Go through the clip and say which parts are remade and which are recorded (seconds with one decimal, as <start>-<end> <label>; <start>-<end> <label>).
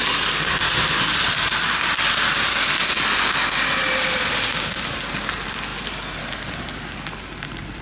0.0-7.8 recorded